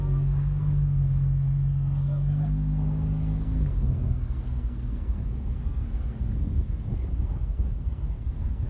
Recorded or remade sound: remade